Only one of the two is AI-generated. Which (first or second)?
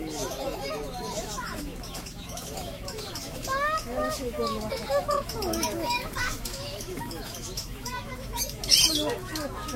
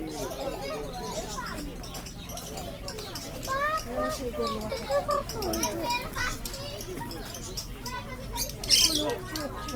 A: first